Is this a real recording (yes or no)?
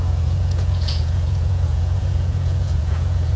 no